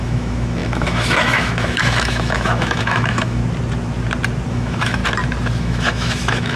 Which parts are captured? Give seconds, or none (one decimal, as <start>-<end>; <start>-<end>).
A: 3.4-4.5; 5.0-5.6